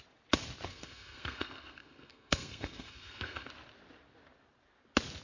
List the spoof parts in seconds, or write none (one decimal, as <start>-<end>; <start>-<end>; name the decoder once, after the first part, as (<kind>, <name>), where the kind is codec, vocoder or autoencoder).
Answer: 0.7-3.5 (codec, SNAC)